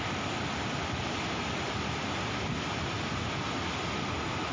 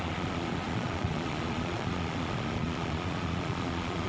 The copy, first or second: second